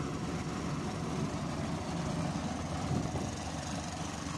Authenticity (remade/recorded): recorded